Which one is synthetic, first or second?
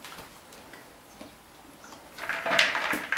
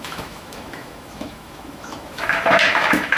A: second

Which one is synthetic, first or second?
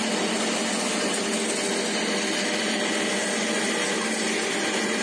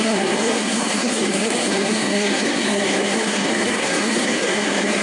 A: second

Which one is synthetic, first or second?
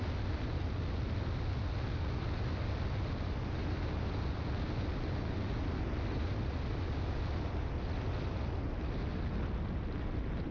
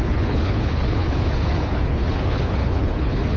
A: second